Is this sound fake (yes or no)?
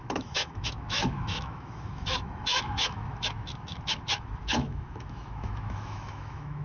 yes